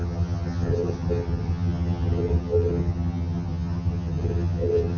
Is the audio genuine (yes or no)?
no